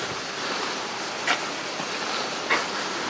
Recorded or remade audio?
recorded